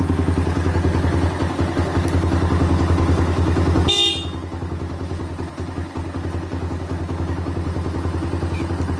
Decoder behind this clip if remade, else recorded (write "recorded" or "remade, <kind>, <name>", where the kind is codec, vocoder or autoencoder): recorded